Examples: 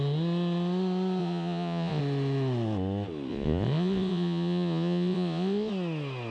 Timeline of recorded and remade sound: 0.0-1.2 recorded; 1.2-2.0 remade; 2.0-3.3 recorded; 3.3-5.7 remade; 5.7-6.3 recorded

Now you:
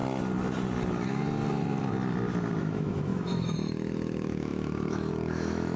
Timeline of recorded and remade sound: 0.0-2.6 recorded; 2.6-5.8 remade

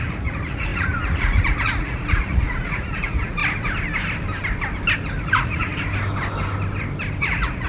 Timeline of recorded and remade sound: 0.0-3.4 remade; 3.4-5.2 recorded; 5.2-5.7 remade; 5.7-7.2 recorded; 7.2-7.7 remade

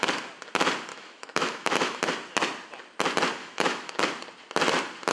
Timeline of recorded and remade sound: 0.0-0.9 recorded; 0.9-2.0 remade; 2.0-3.4 recorded; 3.4-4.0 remade; 4.0-5.1 recorded

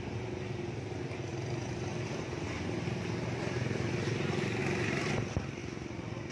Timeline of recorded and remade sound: 0.0-1.3 recorded; 1.3-2.9 remade; 2.9-4.6 recorded; 4.6-5.1 remade; 5.1-6.3 recorded

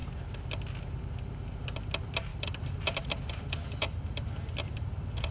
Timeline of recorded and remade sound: 0.0-2.3 recorded; 2.3-5.3 remade

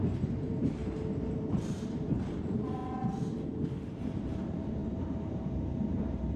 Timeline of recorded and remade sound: 0.0-0.8 remade; 0.8-1.5 recorded; 1.5-2.8 remade; 2.8-3.7 recorded; 3.7-6.4 remade

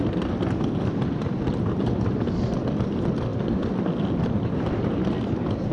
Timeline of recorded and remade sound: 0.0-5.7 recorded